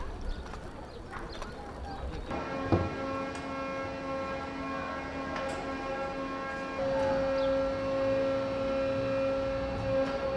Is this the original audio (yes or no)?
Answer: yes